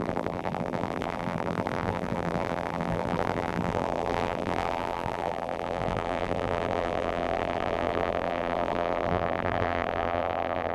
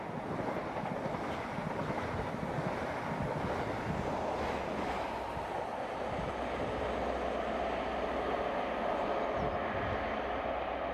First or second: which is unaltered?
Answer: second